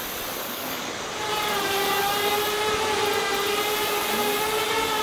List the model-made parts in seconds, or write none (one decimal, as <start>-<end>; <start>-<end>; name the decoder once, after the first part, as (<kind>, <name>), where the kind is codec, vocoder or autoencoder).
0.4-0.9 (codec, DAC)